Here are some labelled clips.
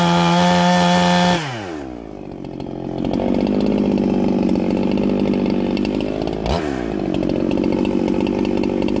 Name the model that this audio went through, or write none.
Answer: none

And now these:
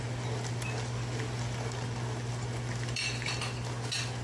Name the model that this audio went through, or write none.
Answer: none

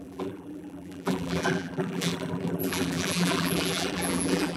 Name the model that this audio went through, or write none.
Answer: vocoder, BigVGAN v2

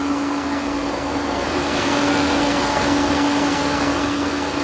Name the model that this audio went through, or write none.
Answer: codec, SNAC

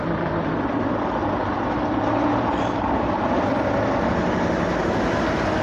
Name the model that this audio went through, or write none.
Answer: none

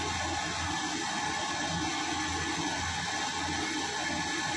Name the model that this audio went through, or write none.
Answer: none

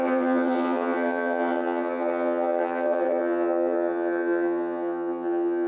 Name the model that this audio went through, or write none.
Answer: vocoder, HiFi-GAN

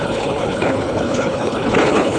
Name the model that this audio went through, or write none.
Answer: codec, HILCodec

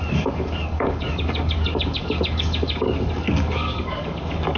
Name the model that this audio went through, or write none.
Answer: codec, DAC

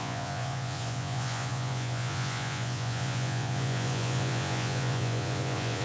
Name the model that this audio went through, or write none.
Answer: vocoder, Vocos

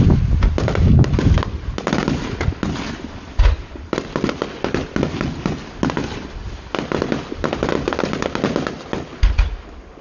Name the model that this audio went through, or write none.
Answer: none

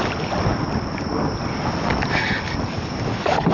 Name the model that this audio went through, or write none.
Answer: none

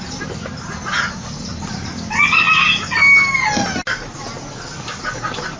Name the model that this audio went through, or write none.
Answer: none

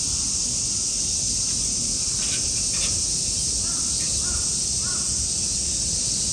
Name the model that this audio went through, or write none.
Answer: none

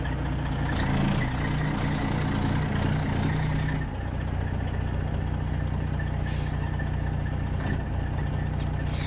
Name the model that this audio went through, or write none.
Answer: none